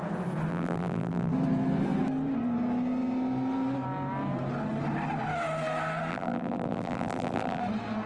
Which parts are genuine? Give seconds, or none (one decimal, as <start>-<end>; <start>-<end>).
0.0-0.5; 1.3-6.1; 7.6-8.1